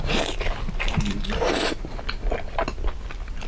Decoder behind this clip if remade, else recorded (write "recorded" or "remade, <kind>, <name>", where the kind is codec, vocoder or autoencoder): recorded